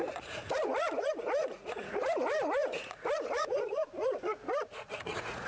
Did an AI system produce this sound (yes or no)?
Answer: yes